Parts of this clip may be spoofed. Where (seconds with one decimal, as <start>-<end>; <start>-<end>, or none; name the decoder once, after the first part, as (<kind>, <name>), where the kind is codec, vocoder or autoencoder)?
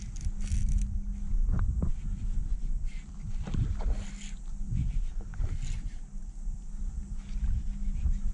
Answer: none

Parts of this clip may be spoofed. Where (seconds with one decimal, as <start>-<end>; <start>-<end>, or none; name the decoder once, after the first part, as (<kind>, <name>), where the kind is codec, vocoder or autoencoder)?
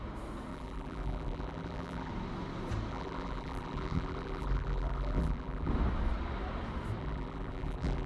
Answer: 0.5-2.1 (vocoder, BigVGAN v2); 2.9-5.7; 7.0-8.1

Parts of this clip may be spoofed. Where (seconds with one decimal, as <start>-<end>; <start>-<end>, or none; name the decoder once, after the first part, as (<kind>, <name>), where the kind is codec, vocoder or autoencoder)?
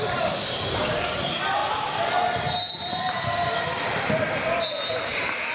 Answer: 0.0-1.6 (vocoder, BigVGAN v2); 4.9-5.5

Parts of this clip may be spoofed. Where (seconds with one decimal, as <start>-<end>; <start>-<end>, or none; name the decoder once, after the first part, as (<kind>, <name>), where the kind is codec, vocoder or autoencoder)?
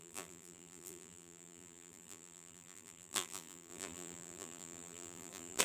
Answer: 0.0-5.6 (vocoder, BigVGAN v2)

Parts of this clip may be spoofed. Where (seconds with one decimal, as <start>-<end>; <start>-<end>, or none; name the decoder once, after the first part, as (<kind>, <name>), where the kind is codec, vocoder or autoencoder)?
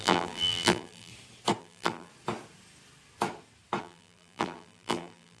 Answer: 0.0-1.1 (vocoder, BigVGAN v2); 1.6-2.1; 3.8-5.4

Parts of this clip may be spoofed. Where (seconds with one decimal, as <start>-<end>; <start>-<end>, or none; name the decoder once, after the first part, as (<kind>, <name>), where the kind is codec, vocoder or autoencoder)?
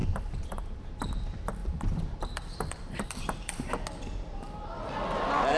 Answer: 0.0-1.1 (vocoder, BigVGAN v2); 1.6-3.7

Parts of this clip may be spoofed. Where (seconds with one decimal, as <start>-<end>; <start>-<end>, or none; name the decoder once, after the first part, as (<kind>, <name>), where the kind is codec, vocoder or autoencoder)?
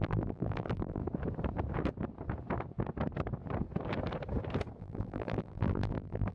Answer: 0.0-1.0 (vocoder, BigVGAN v2); 4.8-6.3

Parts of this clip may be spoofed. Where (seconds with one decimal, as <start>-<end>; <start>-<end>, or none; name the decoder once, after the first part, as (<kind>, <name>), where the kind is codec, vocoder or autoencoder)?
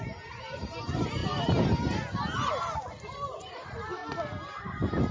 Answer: 0.0-1.2 (vocoder, BigVGAN v2); 3.4-4.0; 4.6-5.1